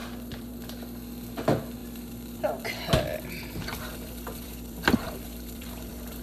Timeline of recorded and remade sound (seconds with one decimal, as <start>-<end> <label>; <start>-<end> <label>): 0.0-0.5 remade; 0.5-1.8 recorded; 1.8-2.8 remade; 2.8-3.7 recorded; 3.7-6.2 remade

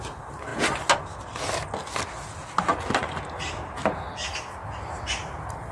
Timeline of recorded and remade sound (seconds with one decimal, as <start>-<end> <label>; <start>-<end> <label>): 0.0-5.7 recorded

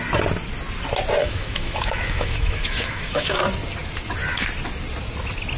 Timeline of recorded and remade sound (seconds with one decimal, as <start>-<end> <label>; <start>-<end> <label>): 0.0-1.2 recorded; 1.2-3.4 remade; 3.4-5.6 recorded

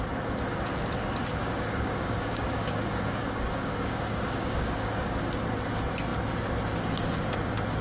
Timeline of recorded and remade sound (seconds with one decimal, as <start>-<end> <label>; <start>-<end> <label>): 0.0-1.4 recorded; 1.4-5.2 remade; 5.2-7.8 recorded

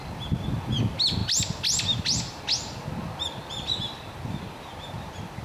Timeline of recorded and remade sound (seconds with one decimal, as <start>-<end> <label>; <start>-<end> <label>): 0.0-5.4 recorded

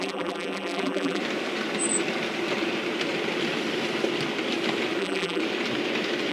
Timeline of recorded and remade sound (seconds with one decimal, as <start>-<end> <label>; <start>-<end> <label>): 0.0-1.2 remade; 1.2-5.0 recorded; 5.0-5.4 remade; 5.4-6.3 recorded

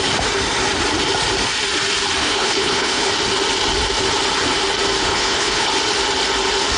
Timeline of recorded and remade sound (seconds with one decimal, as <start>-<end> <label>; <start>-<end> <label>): 0.0-2.2 recorded; 2.2-3.1 remade; 3.1-5.0 recorded; 5.0-5.7 remade; 5.7-6.8 recorded